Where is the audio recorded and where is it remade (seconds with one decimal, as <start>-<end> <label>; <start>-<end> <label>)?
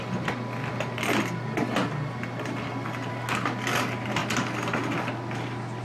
0.0-5.8 recorded